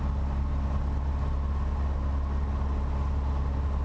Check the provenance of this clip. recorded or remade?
recorded